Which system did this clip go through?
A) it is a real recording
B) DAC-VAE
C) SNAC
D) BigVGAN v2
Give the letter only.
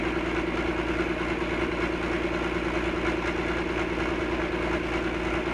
A